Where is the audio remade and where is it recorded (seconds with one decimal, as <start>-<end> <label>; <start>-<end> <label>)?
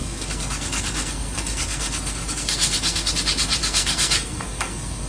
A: 0.0-3.1 remade; 3.1-3.6 recorded; 3.6-5.1 remade